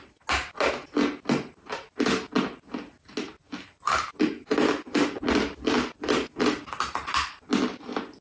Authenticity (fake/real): real